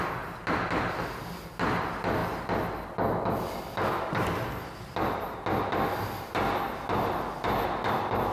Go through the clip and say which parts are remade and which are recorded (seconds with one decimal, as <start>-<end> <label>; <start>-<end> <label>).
0.0-2.2 recorded; 2.2-2.9 remade; 2.9-8.3 recorded